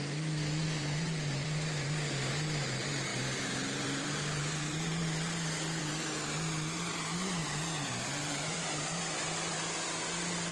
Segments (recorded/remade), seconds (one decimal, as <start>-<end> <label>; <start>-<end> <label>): 0.0-10.5 remade